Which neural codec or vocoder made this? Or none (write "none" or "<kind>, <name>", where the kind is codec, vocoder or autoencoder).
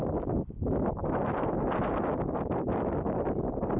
none